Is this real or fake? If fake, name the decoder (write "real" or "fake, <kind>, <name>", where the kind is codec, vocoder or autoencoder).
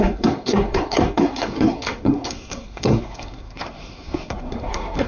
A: fake, codec, SNAC